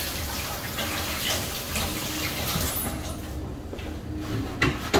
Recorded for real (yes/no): yes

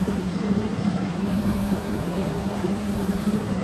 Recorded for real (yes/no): no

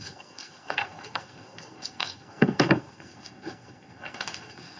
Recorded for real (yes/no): no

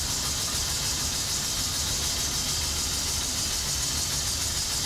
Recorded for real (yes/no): yes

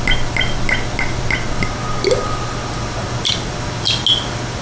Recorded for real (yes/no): yes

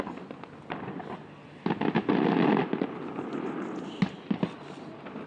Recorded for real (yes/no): yes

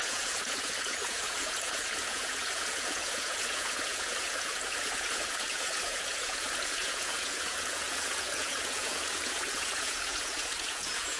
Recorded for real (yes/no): no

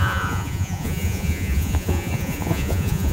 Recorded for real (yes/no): no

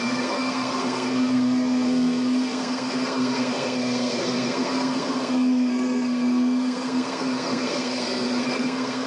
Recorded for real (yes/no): no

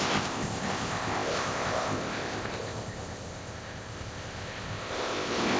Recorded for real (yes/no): no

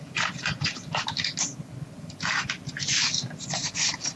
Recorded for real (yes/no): yes